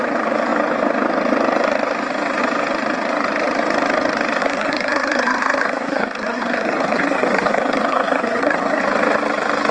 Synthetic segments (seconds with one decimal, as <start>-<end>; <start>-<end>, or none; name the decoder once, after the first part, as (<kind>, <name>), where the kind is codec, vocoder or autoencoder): 4.4-8.8 (codec, SNAC)